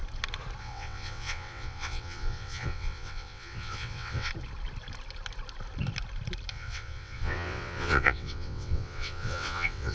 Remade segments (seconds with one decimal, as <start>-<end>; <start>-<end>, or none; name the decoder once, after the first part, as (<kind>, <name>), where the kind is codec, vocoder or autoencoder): 0.6-4.3 (vocoder, WaveNeXt); 6.5-9.9